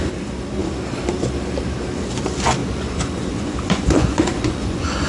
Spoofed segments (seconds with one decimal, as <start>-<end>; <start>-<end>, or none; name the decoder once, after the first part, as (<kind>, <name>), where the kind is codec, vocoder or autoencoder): 2.6-5.1 (vocoder, Vocos)